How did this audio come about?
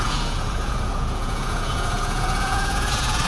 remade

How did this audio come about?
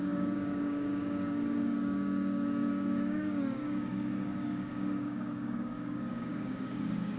remade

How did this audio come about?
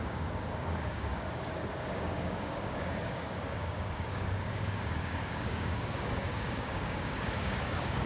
remade